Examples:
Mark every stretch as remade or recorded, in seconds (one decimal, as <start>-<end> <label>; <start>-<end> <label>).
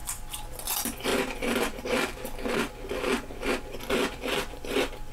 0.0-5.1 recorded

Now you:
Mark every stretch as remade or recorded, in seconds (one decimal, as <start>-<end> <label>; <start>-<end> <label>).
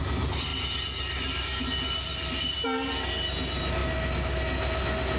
0.0-5.2 recorded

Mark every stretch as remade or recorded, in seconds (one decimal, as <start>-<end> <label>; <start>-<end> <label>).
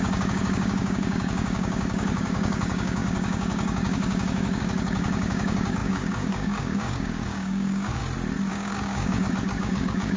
0.0-8.0 remade; 8.0-8.5 recorded; 8.5-10.2 remade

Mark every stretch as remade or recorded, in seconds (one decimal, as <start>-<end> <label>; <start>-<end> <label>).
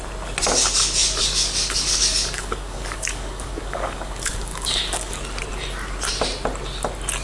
0.0-1.2 recorded; 1.2-5.2 remade; 5.2-7.2 recorded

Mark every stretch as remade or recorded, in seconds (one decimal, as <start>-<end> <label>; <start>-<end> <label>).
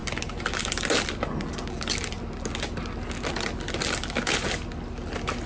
0.0-5.5 recorded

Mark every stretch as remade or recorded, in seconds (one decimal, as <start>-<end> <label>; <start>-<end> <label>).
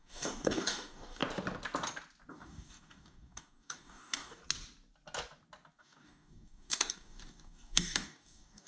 0.0-1.2 remade; 1.2-2.3 recorded; 2.3-4.4 remade; 4.4-5.8 recorded; 5.8-8.7 remade